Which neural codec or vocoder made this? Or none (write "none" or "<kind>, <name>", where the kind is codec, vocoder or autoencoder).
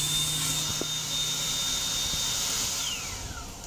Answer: none